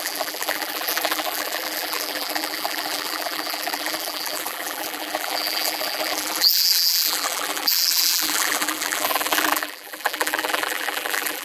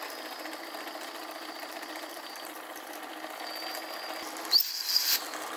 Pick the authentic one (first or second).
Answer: second